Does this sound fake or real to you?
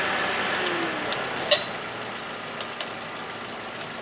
real